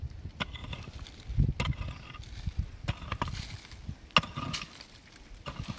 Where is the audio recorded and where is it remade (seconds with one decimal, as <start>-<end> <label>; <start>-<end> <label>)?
0.0-5.8 recorded